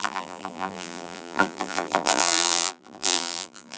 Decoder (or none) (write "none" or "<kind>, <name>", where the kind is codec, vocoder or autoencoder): vocoder, BigVGAN v2